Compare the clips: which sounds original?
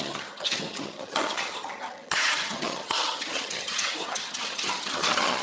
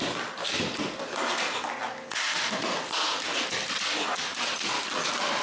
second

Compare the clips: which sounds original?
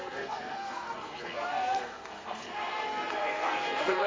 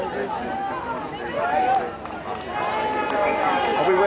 second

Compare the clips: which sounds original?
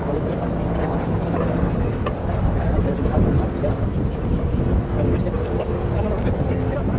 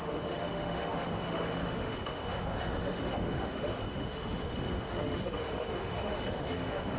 first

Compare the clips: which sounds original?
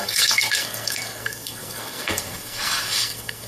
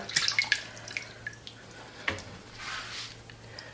second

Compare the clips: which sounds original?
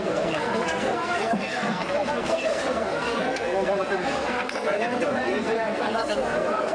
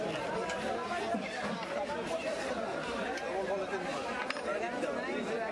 second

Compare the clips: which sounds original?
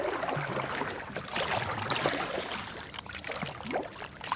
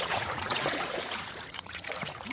first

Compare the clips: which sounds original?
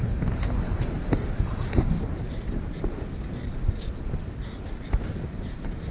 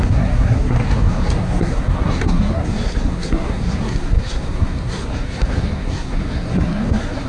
first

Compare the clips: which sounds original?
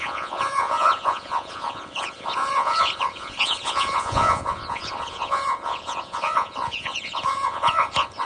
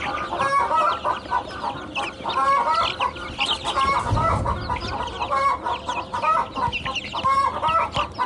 second